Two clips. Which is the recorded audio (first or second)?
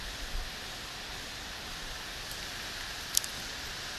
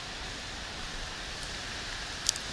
first